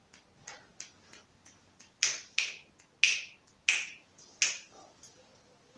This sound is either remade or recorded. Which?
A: recorded